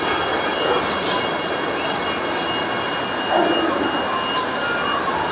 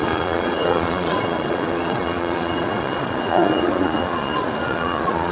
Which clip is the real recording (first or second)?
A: first